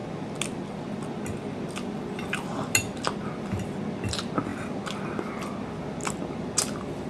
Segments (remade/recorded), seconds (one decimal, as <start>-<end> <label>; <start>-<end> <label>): 0.0-7.1 recorded